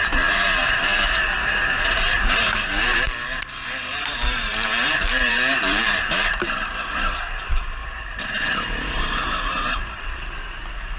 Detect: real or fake fake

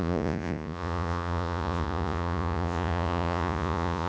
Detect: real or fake fake